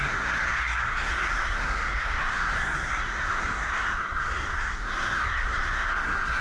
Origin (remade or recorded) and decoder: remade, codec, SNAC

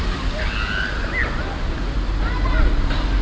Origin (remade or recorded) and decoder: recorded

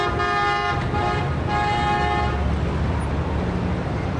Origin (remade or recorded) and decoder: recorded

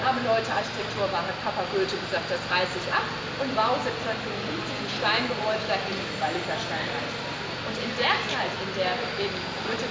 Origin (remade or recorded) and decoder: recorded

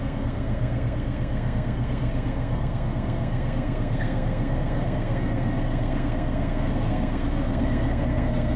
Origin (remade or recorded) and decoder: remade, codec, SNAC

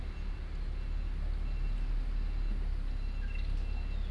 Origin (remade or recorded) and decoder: recorded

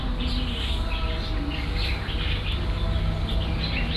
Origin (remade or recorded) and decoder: recorded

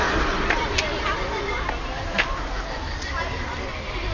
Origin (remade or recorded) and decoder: recorded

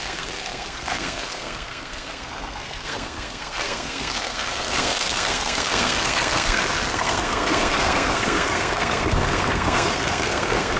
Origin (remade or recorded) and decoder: remade, codec, SNAC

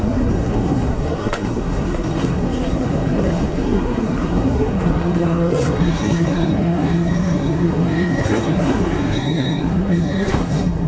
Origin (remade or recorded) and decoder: remade, codec, SNAC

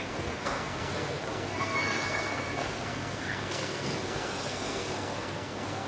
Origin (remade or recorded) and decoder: remade, codec, SNAC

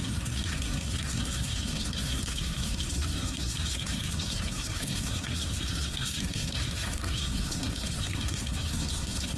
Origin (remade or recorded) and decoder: remade, codec, SNAC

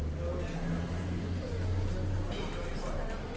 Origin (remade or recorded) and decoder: recorded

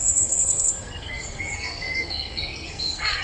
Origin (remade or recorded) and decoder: remade, codec, SNAC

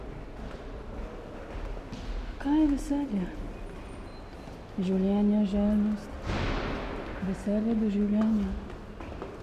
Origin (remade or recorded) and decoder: recorded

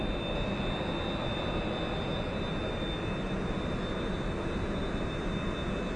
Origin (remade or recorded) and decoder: recorded